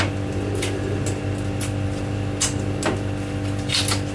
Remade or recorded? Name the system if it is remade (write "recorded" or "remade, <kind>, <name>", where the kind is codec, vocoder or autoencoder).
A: recorded